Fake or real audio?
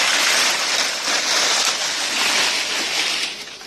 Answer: fake